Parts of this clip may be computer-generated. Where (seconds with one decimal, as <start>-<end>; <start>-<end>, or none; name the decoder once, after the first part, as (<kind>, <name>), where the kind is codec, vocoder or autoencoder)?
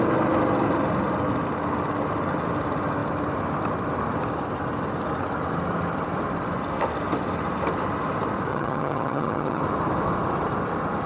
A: 8.5-9.6 (vocoder, HiFi-GAN)